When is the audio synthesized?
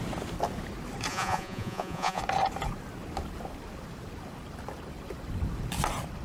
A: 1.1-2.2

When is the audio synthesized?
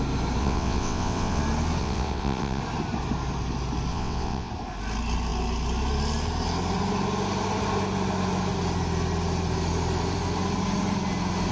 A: 0.4-1.4; 1.8-2.6; 3.9-4.5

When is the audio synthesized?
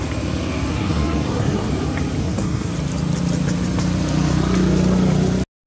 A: 0.7-1.7; 2.2-2.7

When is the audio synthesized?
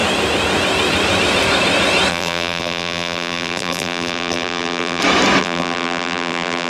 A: 2.1-5.0; 5.4-6.7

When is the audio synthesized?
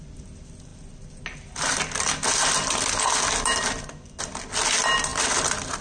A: none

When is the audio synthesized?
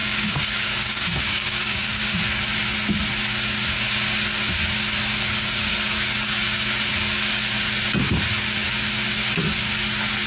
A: 0.0-2.0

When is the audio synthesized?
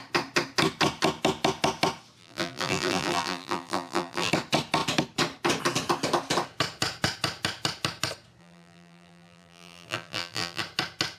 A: 2.2-4.3; 8.4-10.6